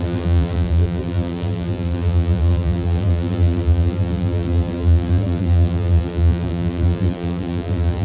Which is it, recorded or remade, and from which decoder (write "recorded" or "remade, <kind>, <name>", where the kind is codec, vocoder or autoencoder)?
remade, vocoder, BigVGAN v2